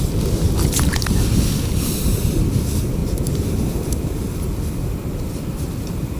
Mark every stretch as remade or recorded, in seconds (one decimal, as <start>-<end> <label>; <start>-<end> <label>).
0.0-1.0 recorded; 1.0-2.4 remade; 2.4-3.0 recorded; 3.0-5.7 remade; 5.7-6.2 recorded